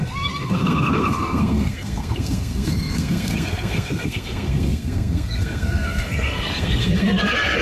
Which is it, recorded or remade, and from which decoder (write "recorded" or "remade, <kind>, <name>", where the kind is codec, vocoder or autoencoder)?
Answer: remade, codec, SNAC